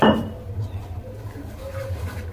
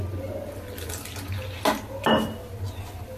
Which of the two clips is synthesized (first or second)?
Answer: first